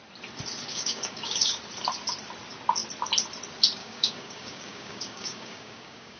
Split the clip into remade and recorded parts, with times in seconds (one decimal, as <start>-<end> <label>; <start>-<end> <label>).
0.0-0.7 recorded; 0.7-1.6 remade; 1.6-3.8 recorded; 3.8-6.2 remade